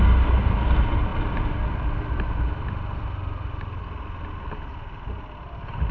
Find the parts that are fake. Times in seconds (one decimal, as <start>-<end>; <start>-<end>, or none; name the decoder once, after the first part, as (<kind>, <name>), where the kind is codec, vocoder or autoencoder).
none